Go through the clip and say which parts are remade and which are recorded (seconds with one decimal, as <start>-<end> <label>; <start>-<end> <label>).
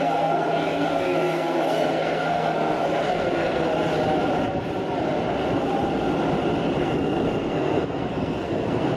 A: 0.0-3.7 remade; 3.7-6.8 recorded; 6.8-9.0 remade